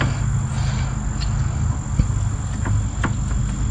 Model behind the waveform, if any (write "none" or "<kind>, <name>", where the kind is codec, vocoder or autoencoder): none